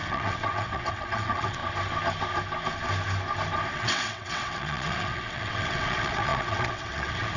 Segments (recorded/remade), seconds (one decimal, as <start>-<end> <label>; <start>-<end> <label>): 0.0-1.6 remade; 1.6-3.7 recorded; 3.7-7.4 remade